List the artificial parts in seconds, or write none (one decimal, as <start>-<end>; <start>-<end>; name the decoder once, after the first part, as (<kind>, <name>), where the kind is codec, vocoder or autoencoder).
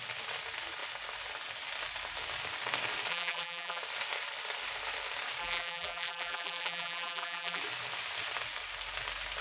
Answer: 3.1-3.8 (vocoder, BigVGAN v2); 5.4-7.6